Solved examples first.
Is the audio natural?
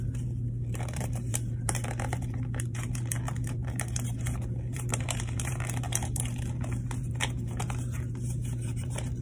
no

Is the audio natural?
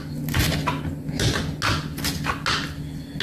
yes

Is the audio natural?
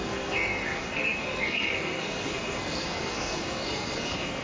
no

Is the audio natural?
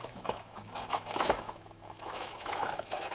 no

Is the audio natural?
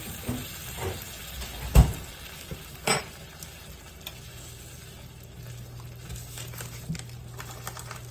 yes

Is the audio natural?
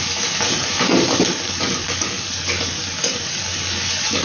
no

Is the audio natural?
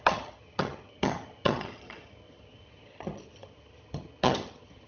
no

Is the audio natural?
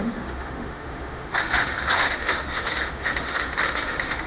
no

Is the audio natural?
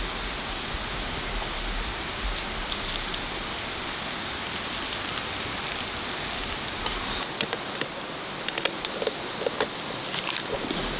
yes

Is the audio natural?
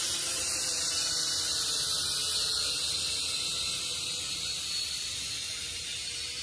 yes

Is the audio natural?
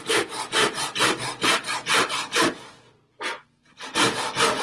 yes